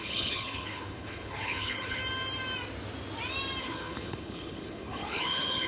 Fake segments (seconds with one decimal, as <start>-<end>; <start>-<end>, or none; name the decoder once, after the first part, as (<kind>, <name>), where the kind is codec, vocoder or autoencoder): 0.0-2.0 (codec, HILCodec); 3.6-5.7